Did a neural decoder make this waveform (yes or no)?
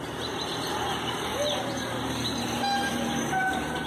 no